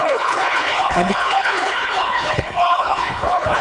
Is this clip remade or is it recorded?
remade